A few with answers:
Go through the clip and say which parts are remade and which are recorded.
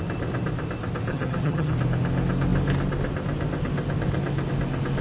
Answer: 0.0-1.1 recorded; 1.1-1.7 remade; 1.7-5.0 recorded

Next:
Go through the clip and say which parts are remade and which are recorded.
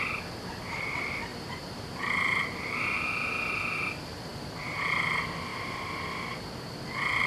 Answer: 0.0-1.3 recorded; 1.3-3.1 remade; 3.1-5.5 recorded; 5.5-6.7 remade; 6.7-7.3 recorded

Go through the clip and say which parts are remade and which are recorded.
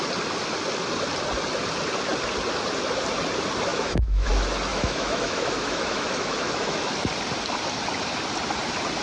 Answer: 0.0-3.7 recorded; 3.7-4.3 remade; 4.3-4.7 recorded; 4.7-6.9 remade; 6.9-9.0 recorded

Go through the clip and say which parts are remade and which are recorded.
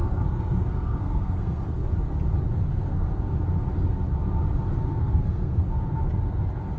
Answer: 0.0-1.9 remade; 1.9-2.7 recorded; 2.7-3.2 remade; 3.2-5.0 recorded; 5.0-5.7 remade; 5.7-6.8 recorded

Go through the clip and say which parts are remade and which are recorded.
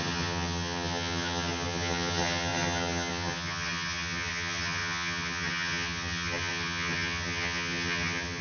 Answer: 0.0-8.4 remade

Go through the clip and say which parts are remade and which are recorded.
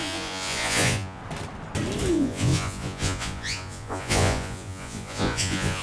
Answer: 0.0-1.2 remade; 1.2-2.1 recorded; 2.1-5.8 remade